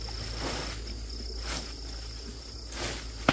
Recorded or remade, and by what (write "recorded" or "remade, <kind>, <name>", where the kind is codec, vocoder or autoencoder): recorded